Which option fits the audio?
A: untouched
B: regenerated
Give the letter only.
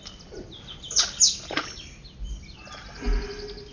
A